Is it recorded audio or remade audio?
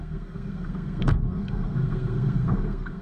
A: remade